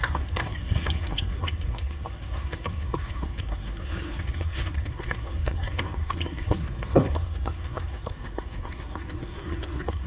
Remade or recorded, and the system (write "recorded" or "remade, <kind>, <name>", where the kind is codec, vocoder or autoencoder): remade, codec, SNAC